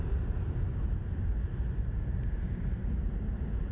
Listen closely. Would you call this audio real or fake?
real